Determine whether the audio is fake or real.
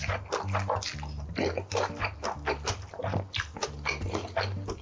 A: real